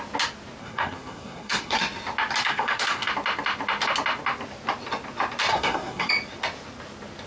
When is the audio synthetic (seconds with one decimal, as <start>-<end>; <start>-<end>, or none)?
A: 0.6-1.8; 2.4-3.1; 5.5-6.1